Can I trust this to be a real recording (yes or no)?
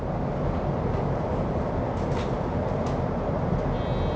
yes